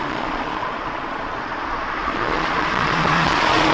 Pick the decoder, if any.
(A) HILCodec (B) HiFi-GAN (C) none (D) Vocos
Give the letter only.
D